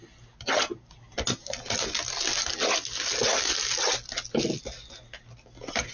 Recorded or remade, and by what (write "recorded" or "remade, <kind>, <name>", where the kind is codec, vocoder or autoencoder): recorded